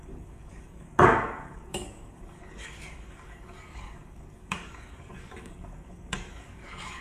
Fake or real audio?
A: fake